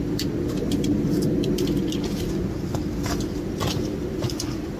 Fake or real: real